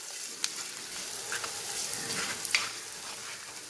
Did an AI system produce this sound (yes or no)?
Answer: no